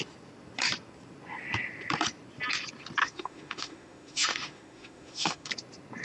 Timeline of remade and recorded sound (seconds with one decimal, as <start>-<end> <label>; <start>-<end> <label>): 0.0-3.0 recorded; 3.0-5.5 remade; 5.5-6.0 recorded

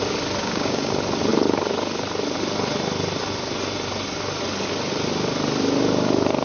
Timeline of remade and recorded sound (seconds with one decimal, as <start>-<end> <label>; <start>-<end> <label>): 0.0-0.4 recorded; 0.4-0.9 remade; 0.9-6.4 recorded

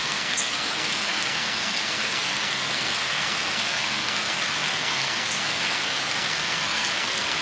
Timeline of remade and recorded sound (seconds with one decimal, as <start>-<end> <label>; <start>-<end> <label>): 0.0-7.4 remade